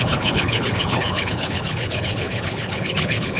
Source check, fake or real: fake